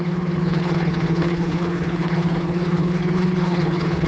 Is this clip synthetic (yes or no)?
yes